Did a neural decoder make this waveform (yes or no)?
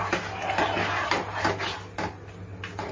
no